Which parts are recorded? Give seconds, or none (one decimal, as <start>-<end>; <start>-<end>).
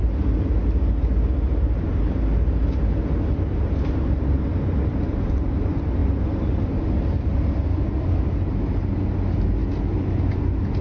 0.0-10.8